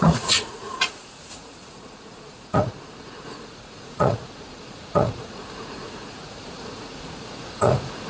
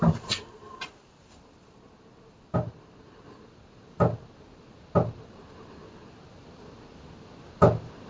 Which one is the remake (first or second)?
first